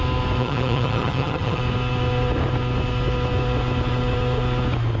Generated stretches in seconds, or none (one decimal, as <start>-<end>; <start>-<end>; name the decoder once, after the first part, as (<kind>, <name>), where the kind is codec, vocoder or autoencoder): 0.4-1.6 (vocoder, HiFi-GAN)